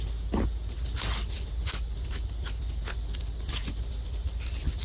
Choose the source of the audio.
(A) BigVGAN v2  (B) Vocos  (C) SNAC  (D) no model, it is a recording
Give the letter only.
D